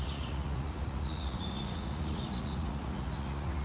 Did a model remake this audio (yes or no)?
yes